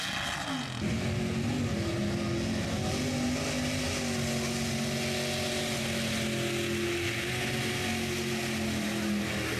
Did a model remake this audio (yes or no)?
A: no